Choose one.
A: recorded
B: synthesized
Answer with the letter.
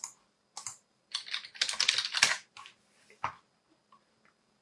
A